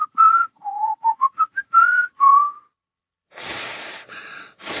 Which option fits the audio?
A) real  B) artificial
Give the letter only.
B